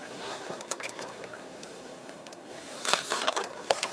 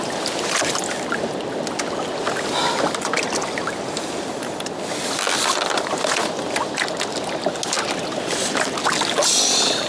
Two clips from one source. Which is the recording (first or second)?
second